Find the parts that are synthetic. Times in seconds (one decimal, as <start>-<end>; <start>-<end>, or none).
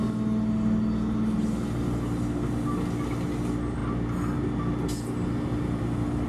none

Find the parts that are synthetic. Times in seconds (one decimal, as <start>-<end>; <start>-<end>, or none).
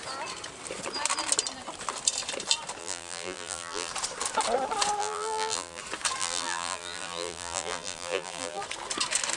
2.8-3.9; 5.0-5.8; 6.2-8.6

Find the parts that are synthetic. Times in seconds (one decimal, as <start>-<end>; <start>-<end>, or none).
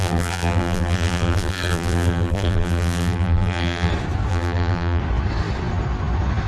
0.0-3.9; 4.3-5.0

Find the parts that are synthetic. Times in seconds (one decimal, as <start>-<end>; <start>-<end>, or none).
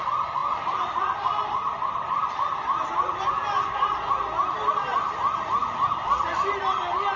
none